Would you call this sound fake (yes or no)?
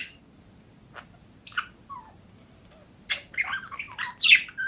no